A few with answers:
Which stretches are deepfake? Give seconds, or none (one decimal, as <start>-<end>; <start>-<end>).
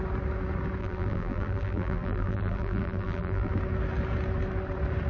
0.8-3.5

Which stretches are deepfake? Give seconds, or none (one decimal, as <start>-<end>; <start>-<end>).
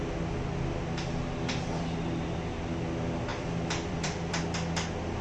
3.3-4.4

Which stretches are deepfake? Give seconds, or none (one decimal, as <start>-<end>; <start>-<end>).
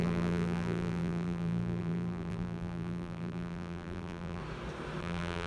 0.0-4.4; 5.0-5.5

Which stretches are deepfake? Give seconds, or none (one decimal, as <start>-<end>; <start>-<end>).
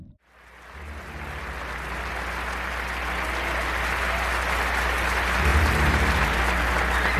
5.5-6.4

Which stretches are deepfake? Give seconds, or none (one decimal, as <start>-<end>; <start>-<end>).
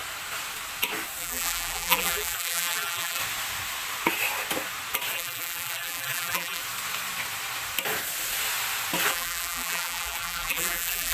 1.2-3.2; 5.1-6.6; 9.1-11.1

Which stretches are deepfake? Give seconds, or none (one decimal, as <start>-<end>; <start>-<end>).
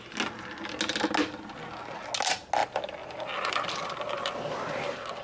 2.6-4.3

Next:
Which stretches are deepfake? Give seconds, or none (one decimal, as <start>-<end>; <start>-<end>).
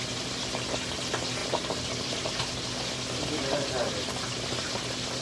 none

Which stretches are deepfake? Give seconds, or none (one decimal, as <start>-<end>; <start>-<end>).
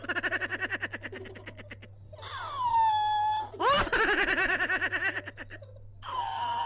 3.9-6.7